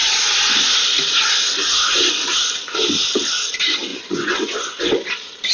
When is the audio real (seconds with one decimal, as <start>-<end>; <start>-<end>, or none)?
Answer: 0.0-3.9; 4.8-5.5